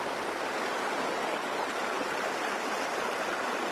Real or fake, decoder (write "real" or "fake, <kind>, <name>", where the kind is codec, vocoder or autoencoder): real